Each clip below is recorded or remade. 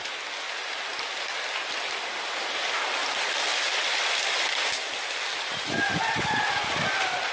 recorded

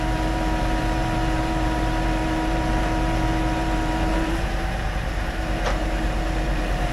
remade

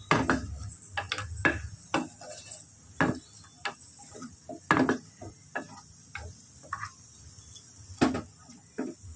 recorded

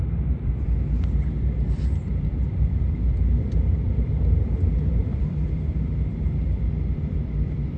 remade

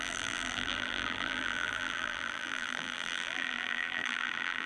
remade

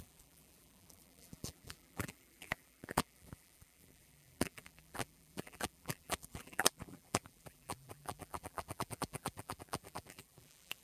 remade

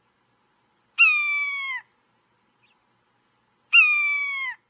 recorded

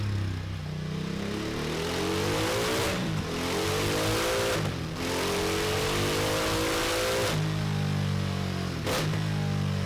recorded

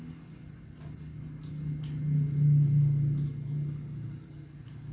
recorded